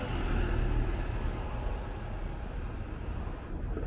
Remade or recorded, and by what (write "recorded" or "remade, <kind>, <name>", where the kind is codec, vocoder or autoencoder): recorded